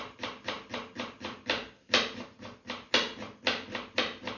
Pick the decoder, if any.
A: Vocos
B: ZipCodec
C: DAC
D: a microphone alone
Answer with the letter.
D